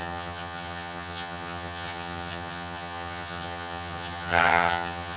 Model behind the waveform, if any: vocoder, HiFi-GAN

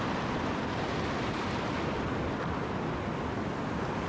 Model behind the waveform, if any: none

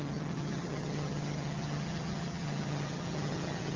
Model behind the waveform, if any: vocoder, HiFi-GAN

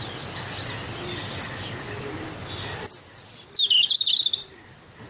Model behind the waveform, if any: none